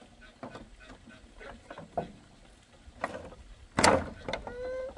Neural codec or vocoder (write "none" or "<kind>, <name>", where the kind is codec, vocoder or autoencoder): none